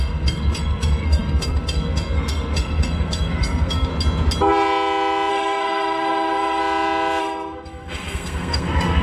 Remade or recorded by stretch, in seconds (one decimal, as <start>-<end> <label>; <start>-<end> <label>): 0.0-3.9 remade; 3.9-5.3 recorded; 5.3-6.6 remade; 6.6-7.2 recorded; 7.2-9.0 remade